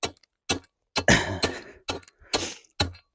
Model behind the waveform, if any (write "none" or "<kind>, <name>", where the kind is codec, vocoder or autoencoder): none